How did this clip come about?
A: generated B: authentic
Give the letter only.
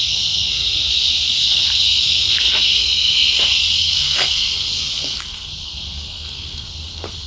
A